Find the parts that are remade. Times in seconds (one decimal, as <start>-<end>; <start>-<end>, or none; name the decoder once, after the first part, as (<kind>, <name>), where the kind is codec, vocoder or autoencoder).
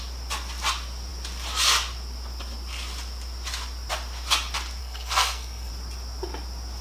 4.8-5.7 (codec, SNAC)